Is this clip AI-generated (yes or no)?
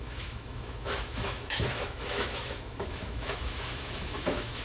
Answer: yes